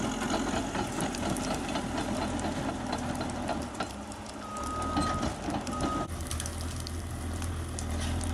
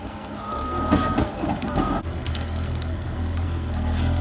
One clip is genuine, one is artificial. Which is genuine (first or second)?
first